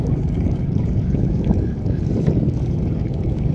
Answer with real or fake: fake